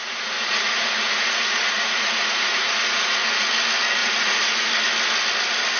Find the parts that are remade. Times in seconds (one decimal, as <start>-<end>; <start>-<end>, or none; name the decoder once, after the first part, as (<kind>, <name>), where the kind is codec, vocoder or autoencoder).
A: 0.0-3.5 (vocoder, Vocos); 4.0-4.7